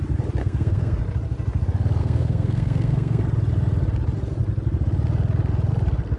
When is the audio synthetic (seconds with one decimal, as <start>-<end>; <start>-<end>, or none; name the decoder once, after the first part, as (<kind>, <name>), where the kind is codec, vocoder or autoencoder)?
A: 0.4-1.0 (codec, SNAC); 2.0-3.2